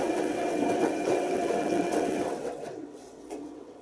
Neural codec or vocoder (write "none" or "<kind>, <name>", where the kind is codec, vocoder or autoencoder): vocoder, WaveNeXt